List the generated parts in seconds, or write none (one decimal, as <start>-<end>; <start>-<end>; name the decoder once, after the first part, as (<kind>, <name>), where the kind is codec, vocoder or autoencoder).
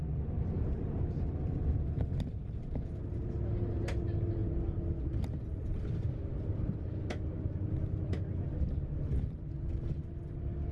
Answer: none